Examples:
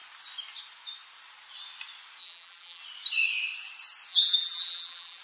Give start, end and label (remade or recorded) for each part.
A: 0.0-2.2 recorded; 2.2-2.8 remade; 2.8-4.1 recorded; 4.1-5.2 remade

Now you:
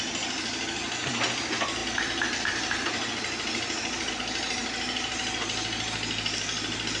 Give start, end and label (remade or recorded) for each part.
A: 0.0-1.8 recorded; 1.8-4.1 remade; 4.1-7.0 recorded

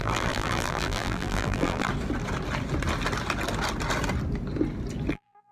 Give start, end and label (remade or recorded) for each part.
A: 0.0-1.9 remade; 1.9-5.1 recorded; 5.1-5.5 remade

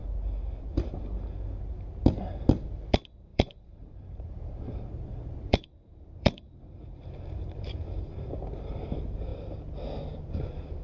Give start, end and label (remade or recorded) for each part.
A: 0.0-3.3 recorded; 3.3-8.3 remade; 8.3-10.8 recorded

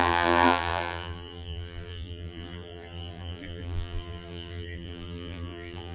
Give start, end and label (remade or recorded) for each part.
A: 0.0-5.9 remade

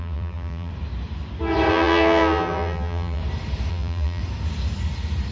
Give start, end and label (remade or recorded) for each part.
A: 0.0-0.7 remade; 0.7-1.7 recorded; 1.7-3.2 remade; 3.2-3.7 recorded; 3.7-4.2 remade; 4.2-5.3 recorded

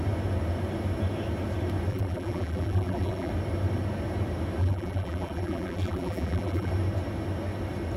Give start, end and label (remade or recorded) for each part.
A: 0.0-1.9 recorded; 1.9-3.3 remade; 3.3-4.6 recorded; 4.6-6.7 remade; 6.7-8.0 recorded

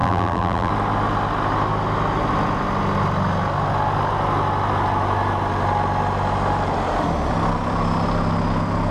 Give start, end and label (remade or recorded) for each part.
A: 0.0-0.7 remade; 0.7-8.9 recorded